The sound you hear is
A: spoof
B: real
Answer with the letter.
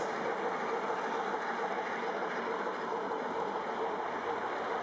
B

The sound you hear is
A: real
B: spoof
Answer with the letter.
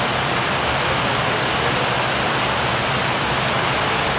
A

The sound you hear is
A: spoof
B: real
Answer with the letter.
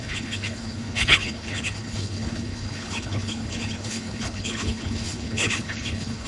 A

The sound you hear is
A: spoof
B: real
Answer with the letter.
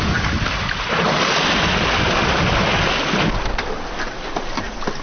B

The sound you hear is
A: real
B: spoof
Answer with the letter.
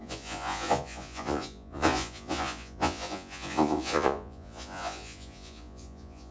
B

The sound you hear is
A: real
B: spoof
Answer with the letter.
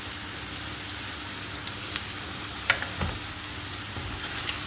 A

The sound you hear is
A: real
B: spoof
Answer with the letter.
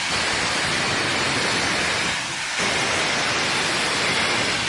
A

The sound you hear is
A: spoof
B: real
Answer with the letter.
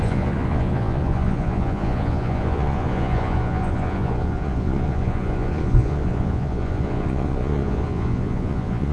A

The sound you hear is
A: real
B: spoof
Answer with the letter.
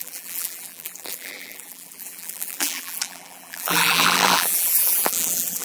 B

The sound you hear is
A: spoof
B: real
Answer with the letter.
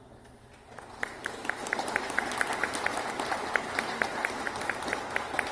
B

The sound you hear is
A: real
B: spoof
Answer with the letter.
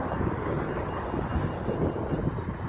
A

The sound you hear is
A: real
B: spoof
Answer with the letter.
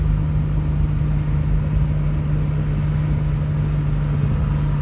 A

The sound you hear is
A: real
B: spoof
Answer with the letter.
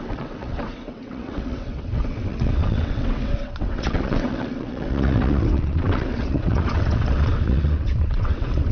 B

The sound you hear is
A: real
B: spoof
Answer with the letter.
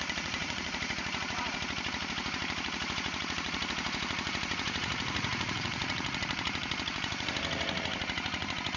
B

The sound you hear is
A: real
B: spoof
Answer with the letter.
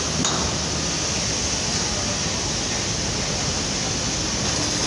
A